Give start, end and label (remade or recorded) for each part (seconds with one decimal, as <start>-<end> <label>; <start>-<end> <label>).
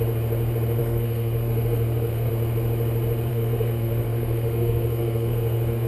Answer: 0.0-0.8 recorded; 0.8-2.3 remade; 2.3-3.3 recorded; 3.3-5.9 remade